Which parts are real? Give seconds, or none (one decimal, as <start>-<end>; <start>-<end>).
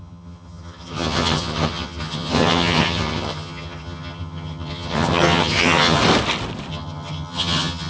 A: 6.0-6.7